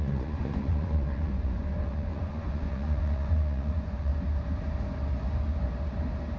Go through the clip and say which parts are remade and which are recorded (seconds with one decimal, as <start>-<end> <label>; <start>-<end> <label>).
0.0-4.1 remade; 4.1-6.4 recorded